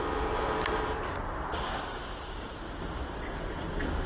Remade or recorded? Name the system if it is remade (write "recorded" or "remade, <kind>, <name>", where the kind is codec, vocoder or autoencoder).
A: recorded